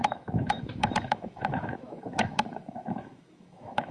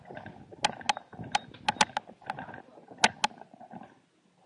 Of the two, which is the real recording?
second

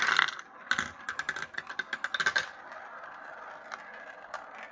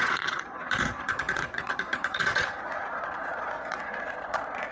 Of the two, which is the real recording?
first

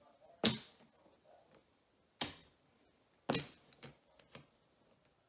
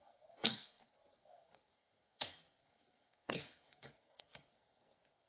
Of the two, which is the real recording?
first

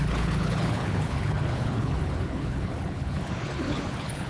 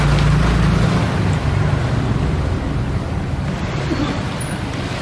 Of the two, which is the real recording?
second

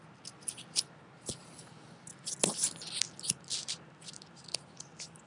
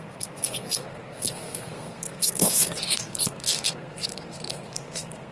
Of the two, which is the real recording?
first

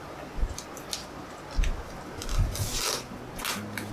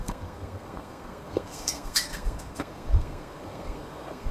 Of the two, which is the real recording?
first